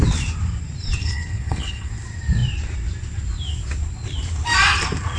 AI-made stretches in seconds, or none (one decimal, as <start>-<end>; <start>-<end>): 1.0-1.9